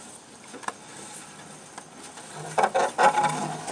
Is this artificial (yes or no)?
no